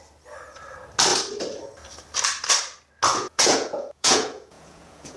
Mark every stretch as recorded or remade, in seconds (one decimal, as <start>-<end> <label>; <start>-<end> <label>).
0.0-3.1 recorded; 3.1-5.2 remade